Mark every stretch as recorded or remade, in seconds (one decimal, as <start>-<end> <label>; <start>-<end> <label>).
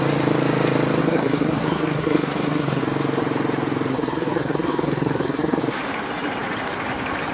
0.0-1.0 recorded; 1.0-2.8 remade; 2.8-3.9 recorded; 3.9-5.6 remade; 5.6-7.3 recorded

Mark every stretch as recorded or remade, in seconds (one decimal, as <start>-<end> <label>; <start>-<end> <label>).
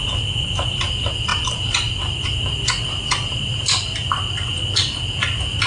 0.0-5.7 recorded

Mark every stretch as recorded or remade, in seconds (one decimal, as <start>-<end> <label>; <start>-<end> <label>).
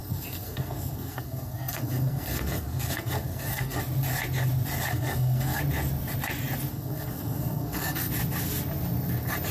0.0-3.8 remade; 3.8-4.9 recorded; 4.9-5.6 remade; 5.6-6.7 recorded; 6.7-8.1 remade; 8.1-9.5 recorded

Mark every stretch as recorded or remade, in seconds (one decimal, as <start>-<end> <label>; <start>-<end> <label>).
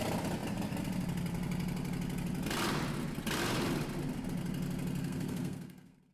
0.0-5.0 recorded; 5.0-6.1 remade